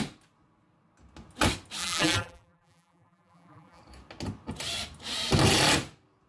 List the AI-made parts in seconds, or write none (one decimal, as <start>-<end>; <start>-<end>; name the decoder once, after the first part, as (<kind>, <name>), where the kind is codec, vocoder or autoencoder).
1.8-3.8 (vocoder, BigVGAN v2)